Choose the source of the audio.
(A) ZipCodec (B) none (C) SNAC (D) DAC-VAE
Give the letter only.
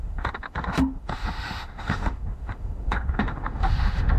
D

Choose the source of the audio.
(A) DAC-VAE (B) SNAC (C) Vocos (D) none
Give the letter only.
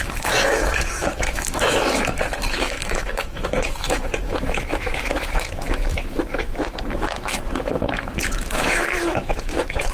A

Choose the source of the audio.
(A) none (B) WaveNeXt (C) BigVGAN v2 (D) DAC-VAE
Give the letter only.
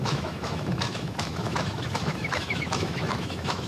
D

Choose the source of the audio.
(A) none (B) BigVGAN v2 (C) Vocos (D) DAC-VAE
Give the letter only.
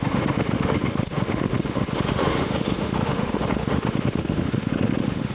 D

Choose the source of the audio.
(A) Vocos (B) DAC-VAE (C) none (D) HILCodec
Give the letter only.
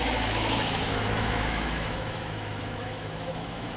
B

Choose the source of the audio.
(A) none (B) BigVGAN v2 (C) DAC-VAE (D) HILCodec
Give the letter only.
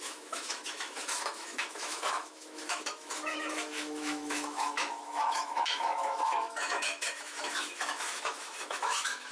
C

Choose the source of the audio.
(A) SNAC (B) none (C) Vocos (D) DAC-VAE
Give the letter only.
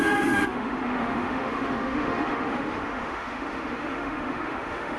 D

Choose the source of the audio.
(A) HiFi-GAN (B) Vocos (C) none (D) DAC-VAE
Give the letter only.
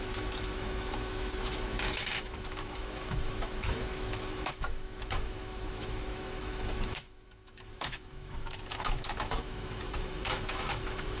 D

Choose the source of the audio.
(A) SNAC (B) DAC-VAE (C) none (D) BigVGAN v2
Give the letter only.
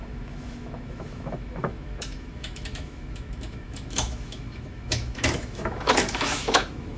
B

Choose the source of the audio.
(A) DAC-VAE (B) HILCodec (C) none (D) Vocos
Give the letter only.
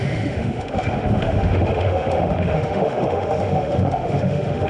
A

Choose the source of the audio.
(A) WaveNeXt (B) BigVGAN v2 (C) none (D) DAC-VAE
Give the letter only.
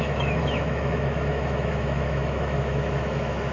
D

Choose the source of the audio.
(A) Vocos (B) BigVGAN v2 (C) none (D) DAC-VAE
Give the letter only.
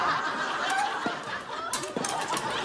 C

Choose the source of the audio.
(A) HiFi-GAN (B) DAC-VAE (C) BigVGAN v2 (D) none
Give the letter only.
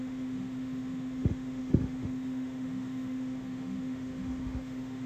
B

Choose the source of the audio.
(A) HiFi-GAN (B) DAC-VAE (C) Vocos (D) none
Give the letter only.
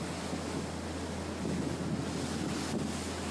D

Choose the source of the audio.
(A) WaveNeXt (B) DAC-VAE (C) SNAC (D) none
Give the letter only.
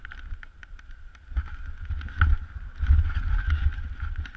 D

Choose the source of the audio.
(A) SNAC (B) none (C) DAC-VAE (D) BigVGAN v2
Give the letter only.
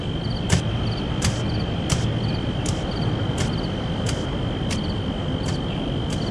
B